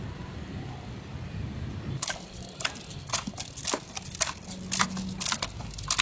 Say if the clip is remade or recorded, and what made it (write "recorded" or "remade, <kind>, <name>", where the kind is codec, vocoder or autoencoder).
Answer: recorded